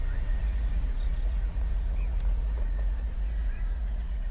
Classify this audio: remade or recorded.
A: remade